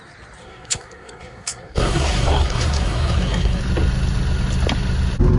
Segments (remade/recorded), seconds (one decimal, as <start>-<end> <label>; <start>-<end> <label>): 0.0-0.4 recorded; 0.4-3.6 remade; 3.6-5.4 recorded